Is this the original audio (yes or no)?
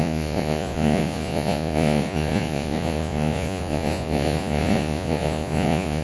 no